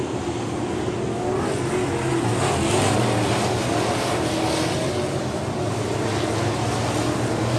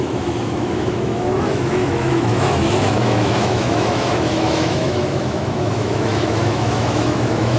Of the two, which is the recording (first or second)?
first